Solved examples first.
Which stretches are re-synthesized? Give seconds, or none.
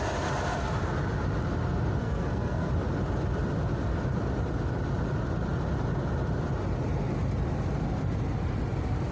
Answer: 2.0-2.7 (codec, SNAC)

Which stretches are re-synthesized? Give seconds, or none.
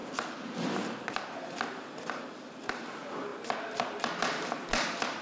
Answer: none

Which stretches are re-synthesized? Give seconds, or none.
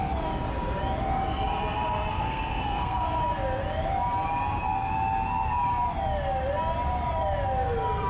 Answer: 2.1-3.2 (codec, SNAC)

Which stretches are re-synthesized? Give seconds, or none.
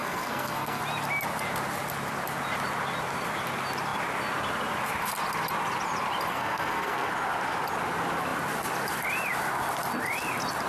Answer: 0.0-0.8 (codec, SNAC); 6.3-7.1